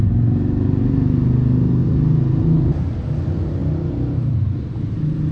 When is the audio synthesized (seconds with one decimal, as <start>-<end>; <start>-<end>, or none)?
none